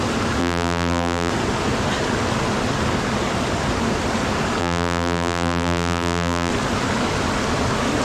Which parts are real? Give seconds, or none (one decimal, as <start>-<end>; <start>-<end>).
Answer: 0.0-0.4; 1.3-4.6; 6.5-8.0